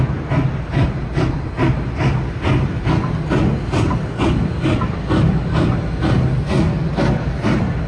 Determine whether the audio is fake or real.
real